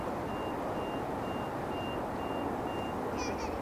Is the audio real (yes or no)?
yes